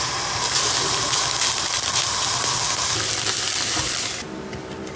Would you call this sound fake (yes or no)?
no